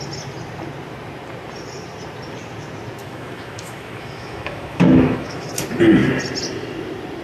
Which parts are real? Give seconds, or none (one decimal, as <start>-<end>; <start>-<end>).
0.0-3.0; 5.5-7.2